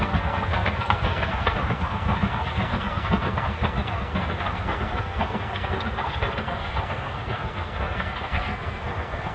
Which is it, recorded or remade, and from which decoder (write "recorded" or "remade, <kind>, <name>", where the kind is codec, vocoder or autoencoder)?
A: remade, codec, SNAC